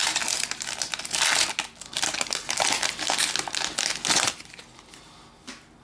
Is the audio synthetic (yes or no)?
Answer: no